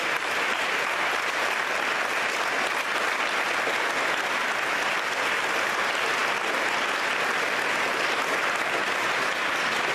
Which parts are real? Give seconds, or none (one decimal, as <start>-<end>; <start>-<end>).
0.0-9.9